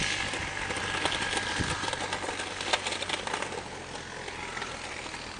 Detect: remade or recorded recorded